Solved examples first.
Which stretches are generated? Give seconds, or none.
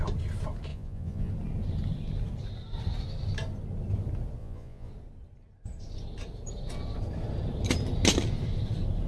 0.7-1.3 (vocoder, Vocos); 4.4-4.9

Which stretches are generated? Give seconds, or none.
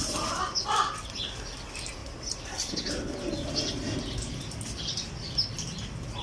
none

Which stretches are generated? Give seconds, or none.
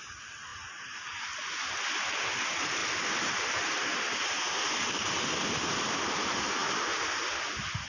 none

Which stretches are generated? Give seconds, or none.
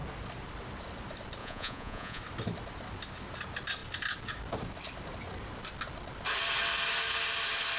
1.4-2.2 (vocoder, Vocos)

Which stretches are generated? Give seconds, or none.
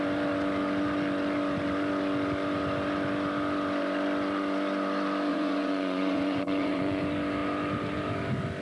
5.3-7.0 (vocoder, Vocos)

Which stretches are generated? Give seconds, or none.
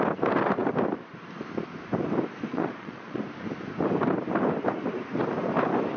2.5-3.2 (vocoder, Vocos)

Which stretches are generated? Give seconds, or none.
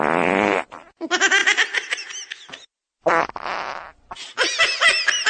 none